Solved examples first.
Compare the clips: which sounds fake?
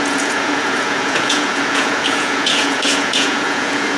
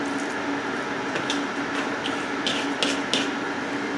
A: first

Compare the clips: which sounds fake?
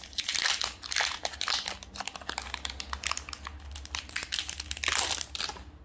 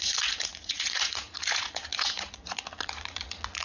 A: second